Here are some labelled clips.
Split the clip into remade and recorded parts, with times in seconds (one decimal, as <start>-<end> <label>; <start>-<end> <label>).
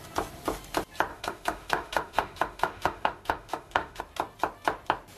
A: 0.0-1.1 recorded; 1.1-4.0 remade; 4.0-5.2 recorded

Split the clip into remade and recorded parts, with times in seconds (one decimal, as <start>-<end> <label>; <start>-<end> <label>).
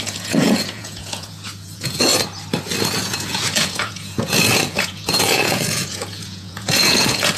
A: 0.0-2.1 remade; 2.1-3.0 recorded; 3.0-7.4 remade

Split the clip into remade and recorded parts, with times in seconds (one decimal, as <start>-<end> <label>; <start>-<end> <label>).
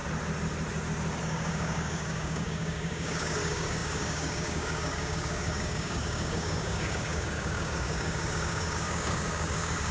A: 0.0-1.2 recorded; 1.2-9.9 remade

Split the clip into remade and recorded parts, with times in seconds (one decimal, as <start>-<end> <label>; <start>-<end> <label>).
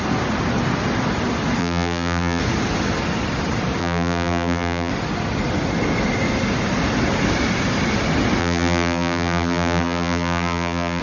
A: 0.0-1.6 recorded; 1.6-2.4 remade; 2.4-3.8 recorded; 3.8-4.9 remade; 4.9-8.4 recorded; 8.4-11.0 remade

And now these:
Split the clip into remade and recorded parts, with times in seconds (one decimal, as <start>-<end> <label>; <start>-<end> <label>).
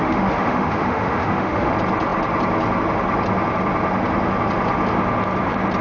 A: 0.0-1.7 remade; 1.7-5.8 recorded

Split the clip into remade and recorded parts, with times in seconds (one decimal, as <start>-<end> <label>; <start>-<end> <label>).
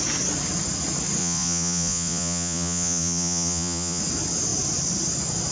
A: 0.0-1.2 recorded; 1.2-4.0 remade; 4.0-5.5 recorded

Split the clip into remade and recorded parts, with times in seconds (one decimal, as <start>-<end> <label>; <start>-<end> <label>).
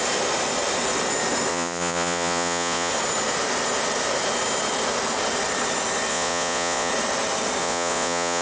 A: 0.0-1.5 recorded; 1.5-2.9 remade; 2.9-6.1 recorded; 6.1-6.9 remade; 6.9-7.6 recorded; 7.6-8.4 remade